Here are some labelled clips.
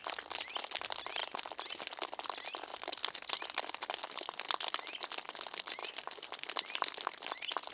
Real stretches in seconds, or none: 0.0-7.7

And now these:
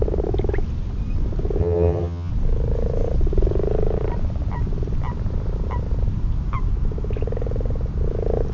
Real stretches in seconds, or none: 0.0-1.6; 2.3-8.5

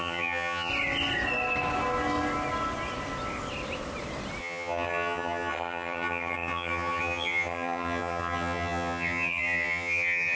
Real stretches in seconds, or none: 0.7-4.4

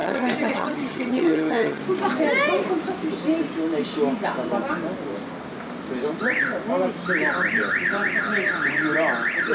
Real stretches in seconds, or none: 1.8-9.5

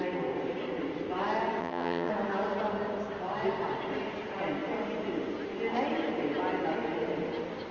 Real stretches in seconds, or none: 0.0-1.6; 2.1-7.7

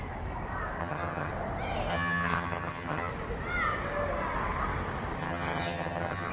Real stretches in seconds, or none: 0.0-0.8; 1.3-1.9; 3.1-5.2

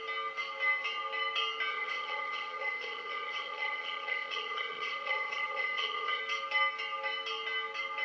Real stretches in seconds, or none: 0.0-1.7; 6.2-8.0

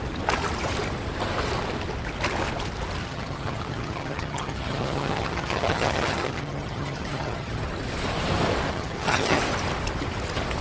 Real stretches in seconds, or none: 0.0-3.0; 7.6-8.7; 9.4-10.6